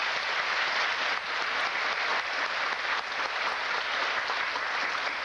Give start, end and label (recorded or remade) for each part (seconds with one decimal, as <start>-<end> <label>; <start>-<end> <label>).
0.0-5.2 recorded